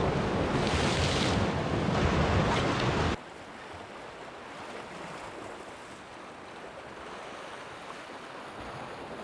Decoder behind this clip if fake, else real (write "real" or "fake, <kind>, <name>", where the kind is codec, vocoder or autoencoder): real